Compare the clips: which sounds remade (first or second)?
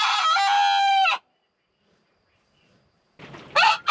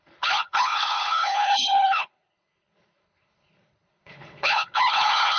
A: second